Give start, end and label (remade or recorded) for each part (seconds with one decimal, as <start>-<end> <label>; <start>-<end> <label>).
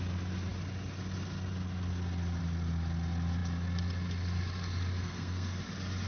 0.0-5.0 recorded; 5.0-5.6 remade; 5.6-6.1 recorded